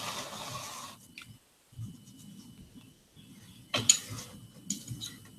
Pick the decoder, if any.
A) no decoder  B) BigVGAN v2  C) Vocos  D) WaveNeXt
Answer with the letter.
A